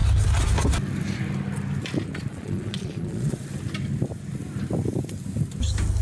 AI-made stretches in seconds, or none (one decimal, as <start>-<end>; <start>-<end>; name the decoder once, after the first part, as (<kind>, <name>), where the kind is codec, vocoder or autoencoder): 2.3-3.4 (vocoder, Vocos)